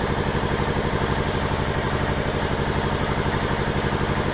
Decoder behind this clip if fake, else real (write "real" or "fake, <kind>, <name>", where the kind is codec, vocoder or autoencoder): fake, vocoder, BigVGAN v2